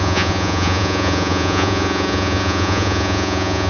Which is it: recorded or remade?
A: remade